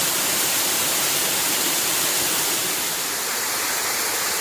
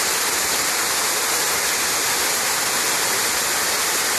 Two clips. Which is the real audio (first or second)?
second